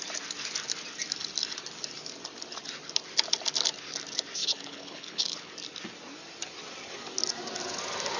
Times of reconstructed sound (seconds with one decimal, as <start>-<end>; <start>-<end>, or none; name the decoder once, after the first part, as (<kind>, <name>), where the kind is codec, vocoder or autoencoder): 4.4-5.5 (codec, HILCodec)